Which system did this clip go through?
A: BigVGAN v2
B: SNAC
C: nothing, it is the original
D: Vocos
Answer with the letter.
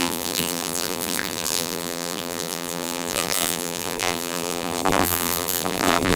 A